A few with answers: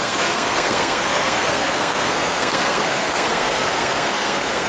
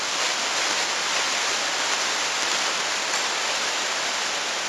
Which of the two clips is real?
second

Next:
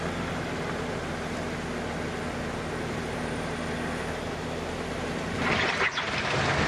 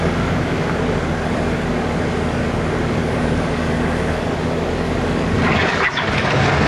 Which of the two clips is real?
first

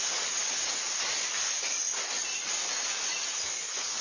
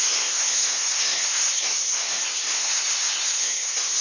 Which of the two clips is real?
first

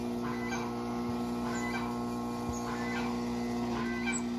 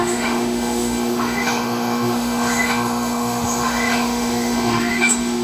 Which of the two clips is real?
first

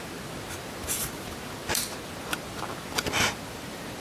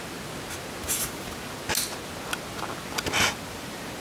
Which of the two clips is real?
second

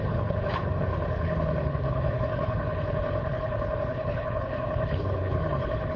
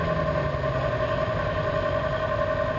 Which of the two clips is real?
second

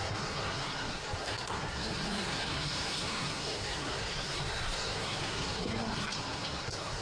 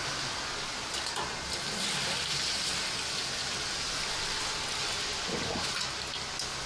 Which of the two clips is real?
second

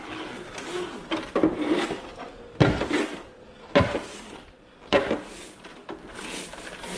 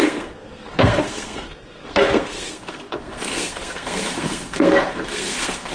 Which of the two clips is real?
first